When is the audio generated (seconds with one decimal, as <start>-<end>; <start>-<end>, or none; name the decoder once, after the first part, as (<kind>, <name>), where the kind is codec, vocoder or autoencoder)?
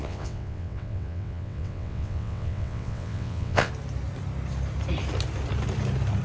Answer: 0.0-3.7 (vocoder, WaveNeXt)